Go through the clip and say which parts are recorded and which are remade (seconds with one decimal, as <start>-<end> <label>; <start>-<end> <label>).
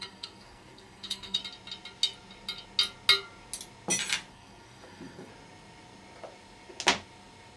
0.0-1.4 remade; 1.4-4.3 recorded; 4.3-5.3 remade; 5.3-7.6 recorded